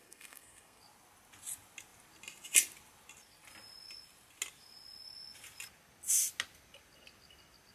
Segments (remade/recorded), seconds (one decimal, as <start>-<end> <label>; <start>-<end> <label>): 0.0-0.8 remade; 0.8-7.7 recorded